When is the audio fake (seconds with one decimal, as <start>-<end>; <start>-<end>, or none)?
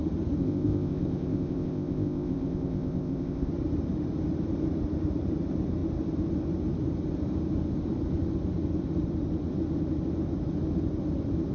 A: 0.4-3.5